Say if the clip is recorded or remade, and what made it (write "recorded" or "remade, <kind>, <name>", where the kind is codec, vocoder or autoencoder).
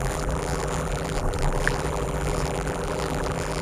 remade, vocoder, BigVGAN v2